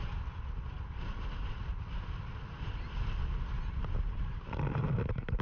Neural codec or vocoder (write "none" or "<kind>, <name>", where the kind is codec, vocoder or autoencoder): none